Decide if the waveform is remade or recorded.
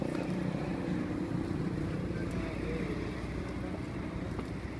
recorded